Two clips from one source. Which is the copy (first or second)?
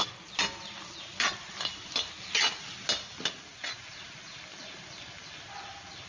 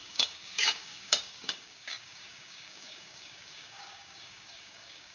second